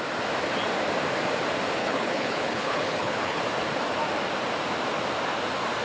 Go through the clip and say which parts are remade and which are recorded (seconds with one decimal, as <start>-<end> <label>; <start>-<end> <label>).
0.0-1.8 recorded; 1.8-3.4 remade; 3.4-5.8 recorded